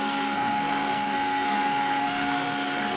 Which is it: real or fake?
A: fake